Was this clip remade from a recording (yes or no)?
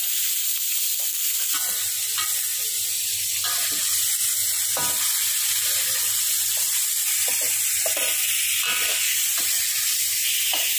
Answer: no